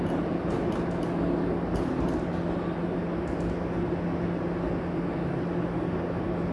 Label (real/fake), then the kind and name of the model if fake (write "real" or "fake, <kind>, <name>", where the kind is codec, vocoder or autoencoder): real